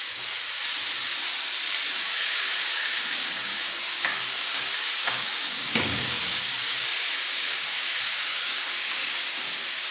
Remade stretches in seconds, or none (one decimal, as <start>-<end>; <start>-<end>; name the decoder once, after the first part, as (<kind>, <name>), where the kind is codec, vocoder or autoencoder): 0.0-0.4 (codec, DAC); 2.0-9.9